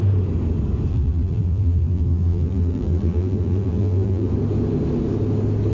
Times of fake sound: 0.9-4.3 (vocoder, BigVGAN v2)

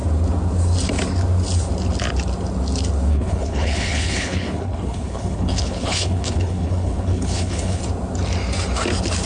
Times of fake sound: 3.1-7.8 (codec, HILCodec)

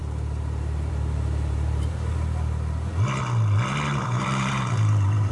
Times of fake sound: 0.0-2.1 (vocoder, BigVGAN v2); 4.0-5.3

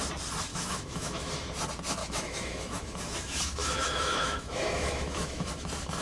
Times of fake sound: 0.5-1.3 (autoencoder, DAC-VAE); 2.0-5.5

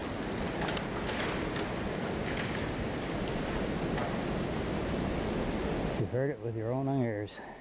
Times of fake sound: none